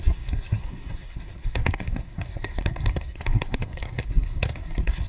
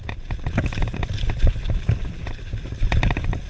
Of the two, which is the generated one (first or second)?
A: first